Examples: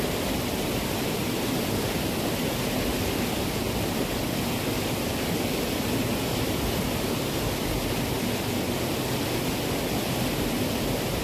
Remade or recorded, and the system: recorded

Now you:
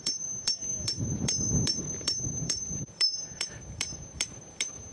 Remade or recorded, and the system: remade, vocoder, BigVGAN v2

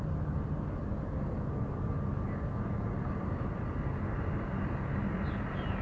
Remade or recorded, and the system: recorded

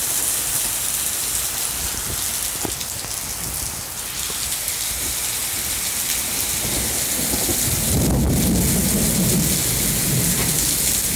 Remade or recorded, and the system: recorded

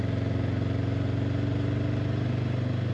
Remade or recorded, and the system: recorded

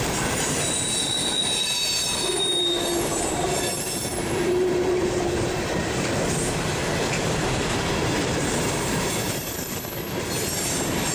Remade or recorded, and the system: remade, vocoder, BigVGAN v2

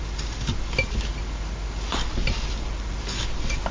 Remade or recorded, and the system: recorded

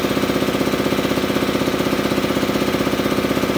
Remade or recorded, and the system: recorded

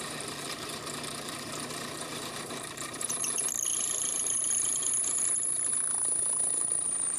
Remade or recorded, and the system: remade, vocoder, BigVGAN v2